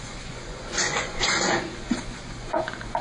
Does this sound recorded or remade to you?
remade